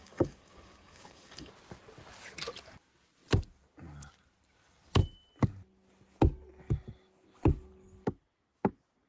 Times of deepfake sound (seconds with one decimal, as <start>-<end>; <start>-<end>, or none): 0.0-1.5